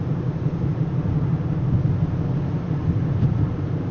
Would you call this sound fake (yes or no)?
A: no